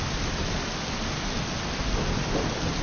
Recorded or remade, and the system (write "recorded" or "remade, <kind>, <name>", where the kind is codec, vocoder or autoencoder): recorded